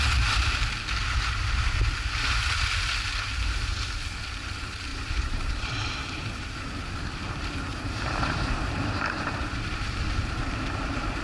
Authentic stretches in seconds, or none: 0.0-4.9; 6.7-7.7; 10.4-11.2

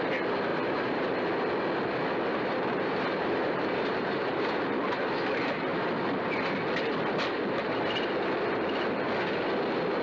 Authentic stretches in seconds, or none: 0.0-0.5; 1.2-2.3; 4.6-10.0

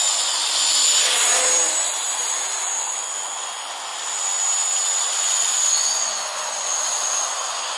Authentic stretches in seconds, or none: 0.4-2.8; 3.9-5.2